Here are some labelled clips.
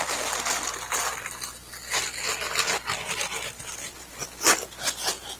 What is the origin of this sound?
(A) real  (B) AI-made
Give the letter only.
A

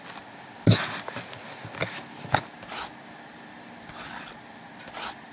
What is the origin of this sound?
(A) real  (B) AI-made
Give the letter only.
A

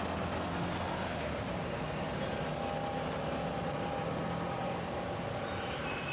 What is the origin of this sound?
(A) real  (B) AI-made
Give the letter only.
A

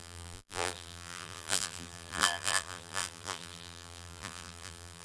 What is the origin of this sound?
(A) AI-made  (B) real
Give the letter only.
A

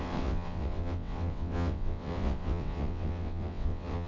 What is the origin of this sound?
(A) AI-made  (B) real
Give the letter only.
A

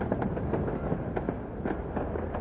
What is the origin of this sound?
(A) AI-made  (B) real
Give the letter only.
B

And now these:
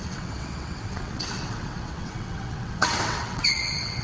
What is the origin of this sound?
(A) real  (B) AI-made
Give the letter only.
B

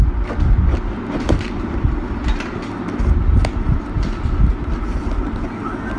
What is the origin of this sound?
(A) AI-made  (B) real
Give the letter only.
B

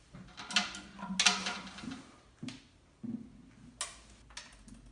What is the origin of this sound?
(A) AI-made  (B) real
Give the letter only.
B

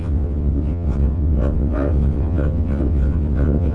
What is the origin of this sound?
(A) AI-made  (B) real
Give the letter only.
A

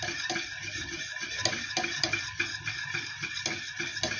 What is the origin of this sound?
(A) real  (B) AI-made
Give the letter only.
A